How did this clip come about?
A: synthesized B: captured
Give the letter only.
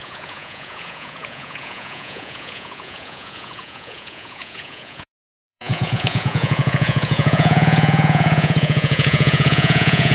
A